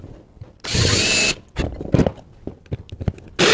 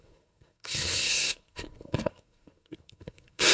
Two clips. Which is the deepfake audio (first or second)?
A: second